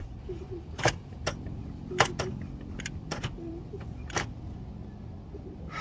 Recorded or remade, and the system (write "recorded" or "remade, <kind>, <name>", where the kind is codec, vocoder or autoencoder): recorded